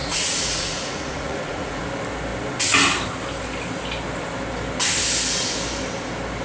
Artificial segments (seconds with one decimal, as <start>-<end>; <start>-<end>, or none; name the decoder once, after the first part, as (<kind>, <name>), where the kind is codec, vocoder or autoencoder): 0.0-1.8 (vocoder, Vocos)